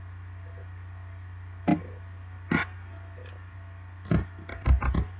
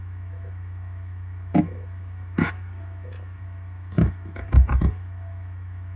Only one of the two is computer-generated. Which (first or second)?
second